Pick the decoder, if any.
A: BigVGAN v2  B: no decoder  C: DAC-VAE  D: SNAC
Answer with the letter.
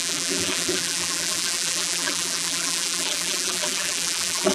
A